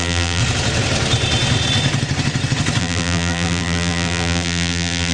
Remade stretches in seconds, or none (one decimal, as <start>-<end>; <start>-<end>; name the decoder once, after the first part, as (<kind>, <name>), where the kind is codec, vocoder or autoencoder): 0.0-0.4 (vocoder, BigVGAN v2); 2.8-5.1